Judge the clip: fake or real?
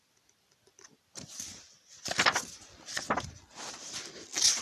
real